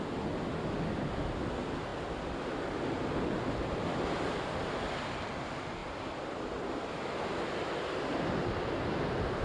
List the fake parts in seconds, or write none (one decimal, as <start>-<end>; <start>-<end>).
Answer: none